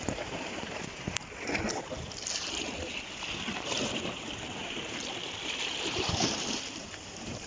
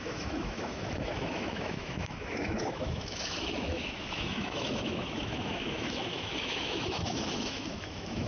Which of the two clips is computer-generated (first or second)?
second